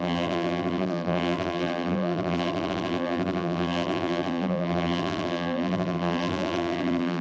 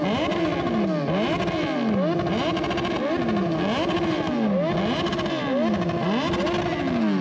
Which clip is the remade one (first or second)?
first